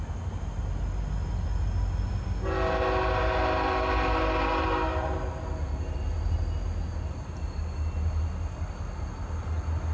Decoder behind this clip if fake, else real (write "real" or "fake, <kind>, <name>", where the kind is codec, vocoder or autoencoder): real